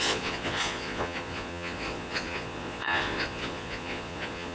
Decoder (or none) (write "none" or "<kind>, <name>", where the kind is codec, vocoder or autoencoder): vocoder, Vocos